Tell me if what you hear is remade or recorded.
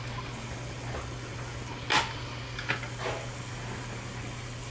recorded